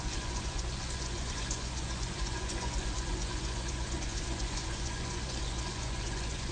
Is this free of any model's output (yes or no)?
no